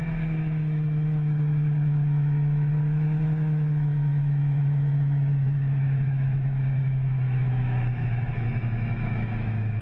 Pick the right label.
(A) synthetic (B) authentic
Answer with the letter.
A